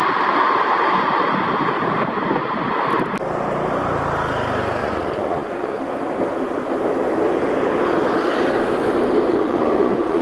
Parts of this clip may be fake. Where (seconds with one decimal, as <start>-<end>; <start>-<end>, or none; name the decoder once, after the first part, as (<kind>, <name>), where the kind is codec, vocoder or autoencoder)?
4.8-5.8 (vocoder, Vocos); 9.3-10.2